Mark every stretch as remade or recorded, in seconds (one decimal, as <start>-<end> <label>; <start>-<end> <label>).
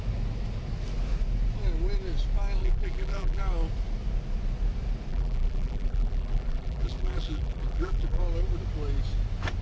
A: 0.0-2.6 recorded; 2.6-3.4 remade; 3.4-5.1 recorded; 5.1-8.2 remade; 8.2-9.6 recorded